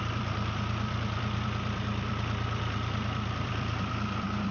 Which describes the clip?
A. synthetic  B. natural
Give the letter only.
A